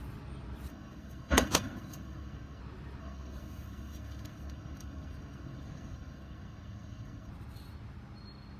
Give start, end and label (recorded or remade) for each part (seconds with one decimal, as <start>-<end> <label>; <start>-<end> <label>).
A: 0.0-0.7 recorded; 0.7-2.6 remade; 2.6-3.0 recorded; 3.0-7.3 remade; 7.3-8.6 recorded